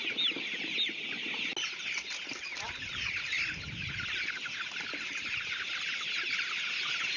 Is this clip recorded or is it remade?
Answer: recorded